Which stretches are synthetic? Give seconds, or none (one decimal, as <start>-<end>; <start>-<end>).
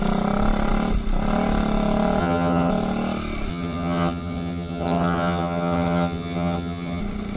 2.2-2.7; 3.5-7.0